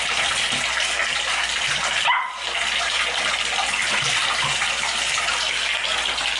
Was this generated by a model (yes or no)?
no